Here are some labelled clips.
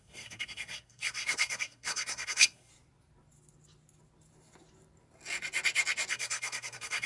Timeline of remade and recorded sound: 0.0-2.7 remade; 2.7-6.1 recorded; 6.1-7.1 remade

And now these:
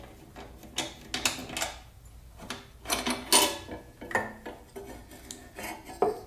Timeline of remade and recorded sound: 0.0-6.3 recorded

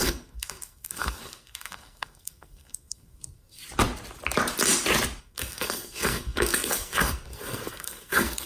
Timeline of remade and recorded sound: 0.0-3.6 remade; 3.6-5.2 recorded; 5.2-8.5 remade

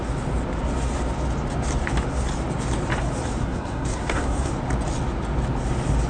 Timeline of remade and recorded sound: 0.0-3.4 recorded; 3.4-4.5 remade; 4.5-6.1 recorded

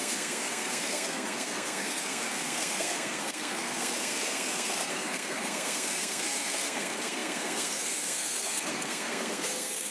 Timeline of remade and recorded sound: 0.0-9.9 remade